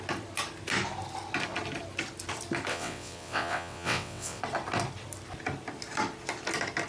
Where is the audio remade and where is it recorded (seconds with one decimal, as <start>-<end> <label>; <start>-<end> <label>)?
0.0-2.7 recorded; 2.7-4.4 remade; 4.4-6.9 recorded